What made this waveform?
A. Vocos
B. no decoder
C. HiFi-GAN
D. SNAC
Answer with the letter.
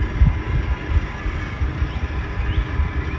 B